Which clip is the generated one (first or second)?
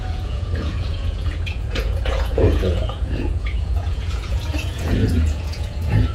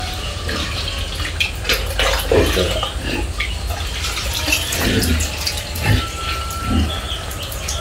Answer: first